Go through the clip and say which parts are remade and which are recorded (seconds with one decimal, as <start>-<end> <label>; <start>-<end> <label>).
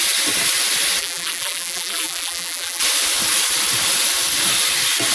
0.0-1.0 recorded; 1.0-2.8 remade; 2.8-5.1 recorded